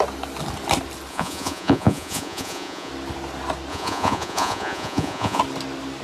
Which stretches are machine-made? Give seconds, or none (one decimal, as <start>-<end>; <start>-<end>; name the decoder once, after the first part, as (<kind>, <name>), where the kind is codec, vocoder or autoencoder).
1.1-2.9 (vocoder, Vocos); 3.7-5.4